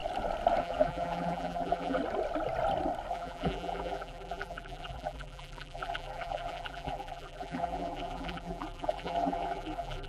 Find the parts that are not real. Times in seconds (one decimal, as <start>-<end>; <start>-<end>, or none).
0.6-2.0; 3.1-10.1